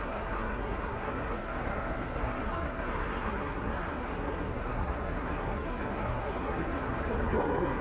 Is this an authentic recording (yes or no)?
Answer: no